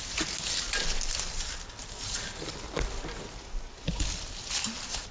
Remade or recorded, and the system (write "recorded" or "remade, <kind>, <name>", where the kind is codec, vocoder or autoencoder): recorded